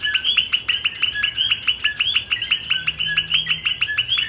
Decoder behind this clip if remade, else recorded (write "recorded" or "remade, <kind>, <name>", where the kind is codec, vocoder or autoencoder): recorded